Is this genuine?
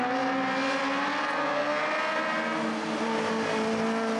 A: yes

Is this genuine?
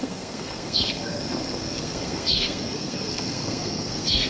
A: no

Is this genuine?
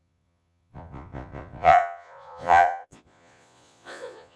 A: no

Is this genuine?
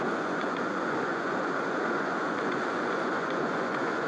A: no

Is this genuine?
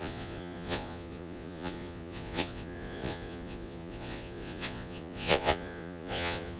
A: no